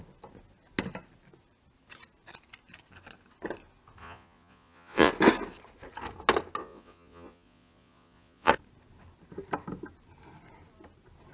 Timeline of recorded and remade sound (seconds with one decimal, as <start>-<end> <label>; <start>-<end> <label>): 0.0-4.0 recorded; 4.0-5.1 remade; 5.1-6.6 recorded; 6.6-8.5 remade; 8.5-11.3 recorded